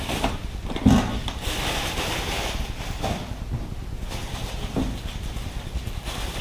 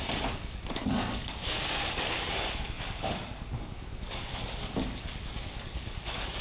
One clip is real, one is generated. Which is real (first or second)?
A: first